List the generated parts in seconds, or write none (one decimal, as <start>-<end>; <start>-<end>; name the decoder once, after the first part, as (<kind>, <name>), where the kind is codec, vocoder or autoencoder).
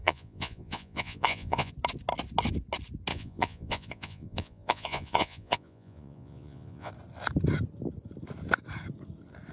0.0-1.7 (vocoder, Vocos); 3.1-6.9